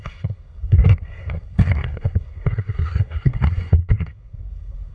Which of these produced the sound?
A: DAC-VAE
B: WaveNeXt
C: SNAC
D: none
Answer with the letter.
C